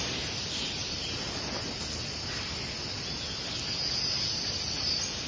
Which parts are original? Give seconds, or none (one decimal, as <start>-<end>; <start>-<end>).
0.0-5.3